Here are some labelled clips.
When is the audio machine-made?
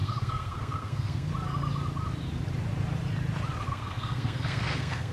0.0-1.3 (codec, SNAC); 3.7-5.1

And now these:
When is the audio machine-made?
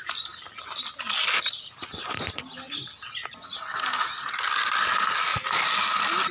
none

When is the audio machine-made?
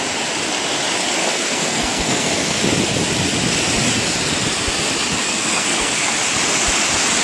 1.2-2.6 (codec, SNAC); 5.2-6.1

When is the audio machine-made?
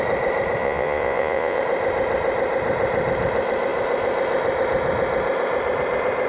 0.6-1.6 (vocoder, Vocos)